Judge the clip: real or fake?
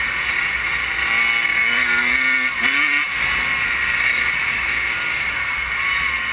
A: real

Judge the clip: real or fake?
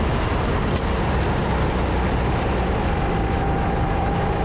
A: real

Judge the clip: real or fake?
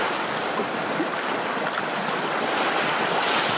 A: real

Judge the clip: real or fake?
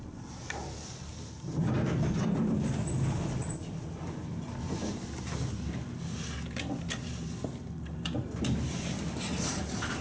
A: real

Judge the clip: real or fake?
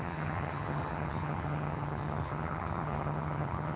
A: fake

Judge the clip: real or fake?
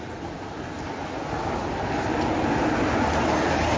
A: real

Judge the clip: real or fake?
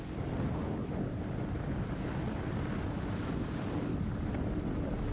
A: real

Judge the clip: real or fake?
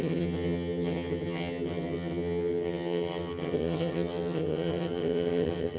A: fake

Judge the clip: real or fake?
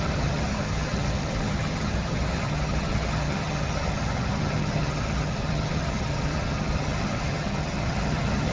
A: fake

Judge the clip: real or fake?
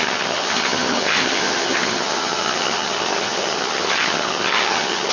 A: fake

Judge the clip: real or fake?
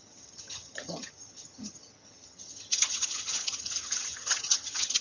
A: fake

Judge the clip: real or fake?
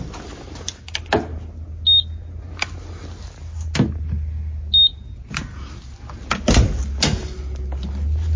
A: real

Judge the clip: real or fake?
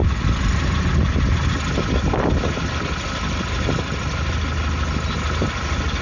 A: real